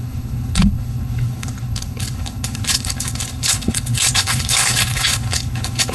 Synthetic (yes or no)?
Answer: yes